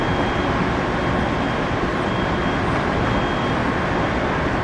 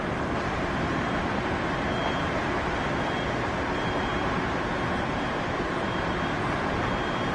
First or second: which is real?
first